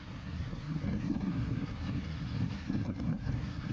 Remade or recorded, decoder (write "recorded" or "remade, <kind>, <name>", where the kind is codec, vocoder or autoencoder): remade, codec, SNAC